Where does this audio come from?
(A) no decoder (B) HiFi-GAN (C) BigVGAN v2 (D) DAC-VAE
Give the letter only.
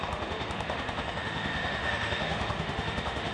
D